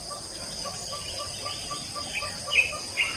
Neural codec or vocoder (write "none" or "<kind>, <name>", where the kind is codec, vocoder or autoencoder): none